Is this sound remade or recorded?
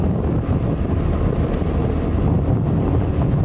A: recorded